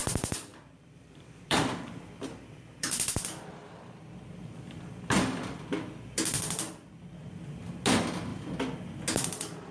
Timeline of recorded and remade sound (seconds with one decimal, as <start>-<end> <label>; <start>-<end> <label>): 0.0-0.5 recorded; 0.5-4.8 remade; 4.8-9.7 recorded